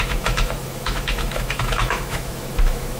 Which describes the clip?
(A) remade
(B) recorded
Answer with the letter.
A